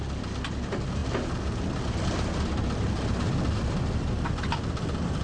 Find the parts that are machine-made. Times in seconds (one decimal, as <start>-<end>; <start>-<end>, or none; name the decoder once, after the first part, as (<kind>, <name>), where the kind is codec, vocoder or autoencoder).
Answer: none